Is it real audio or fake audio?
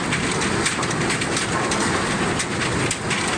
real